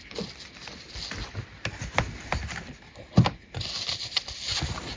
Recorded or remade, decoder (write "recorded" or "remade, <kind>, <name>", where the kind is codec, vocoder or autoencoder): recorded